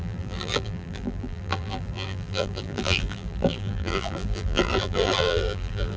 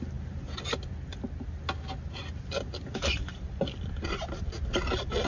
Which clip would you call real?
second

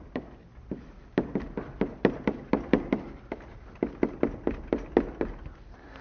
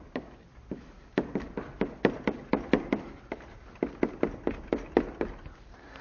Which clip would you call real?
first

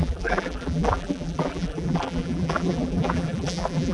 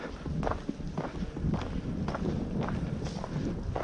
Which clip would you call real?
second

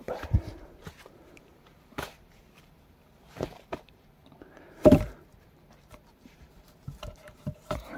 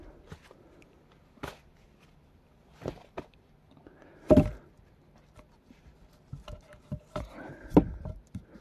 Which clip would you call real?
second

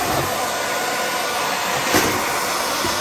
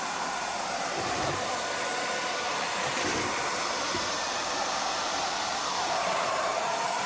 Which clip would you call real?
first